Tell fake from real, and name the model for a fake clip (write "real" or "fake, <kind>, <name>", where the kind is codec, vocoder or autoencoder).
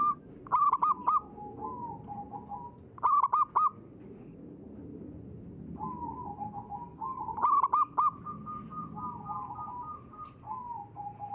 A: real